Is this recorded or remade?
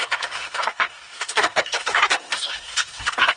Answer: remade